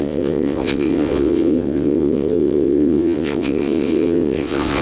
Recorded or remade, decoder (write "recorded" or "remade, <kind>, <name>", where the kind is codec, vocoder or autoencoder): remade, vocoder, WaveNeXt